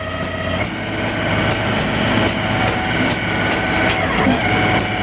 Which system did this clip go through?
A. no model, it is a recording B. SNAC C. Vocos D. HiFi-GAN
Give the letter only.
A